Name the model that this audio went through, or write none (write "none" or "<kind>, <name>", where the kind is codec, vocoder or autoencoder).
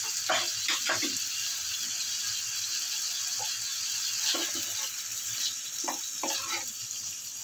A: none